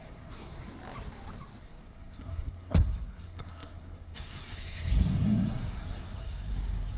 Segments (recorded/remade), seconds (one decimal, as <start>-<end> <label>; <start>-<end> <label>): 0.0-0.6 remade; 0.6-1.6 recorded; 1.6-7.0 remade